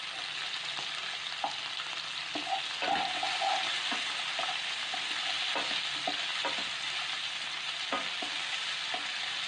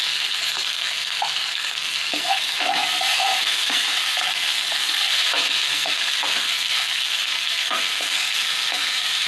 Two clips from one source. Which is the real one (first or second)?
first